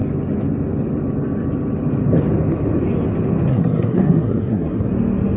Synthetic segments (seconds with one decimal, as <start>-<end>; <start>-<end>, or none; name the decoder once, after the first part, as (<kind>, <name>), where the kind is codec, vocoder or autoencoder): 3.5-4.9 (codec, SNAC)